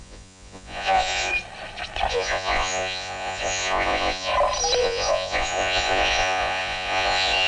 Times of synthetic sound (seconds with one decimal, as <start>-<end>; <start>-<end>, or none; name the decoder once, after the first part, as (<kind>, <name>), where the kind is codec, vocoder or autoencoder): 0.0-1.3 (vocoder, Vocos); 2.1-4.3; 4.8-7.5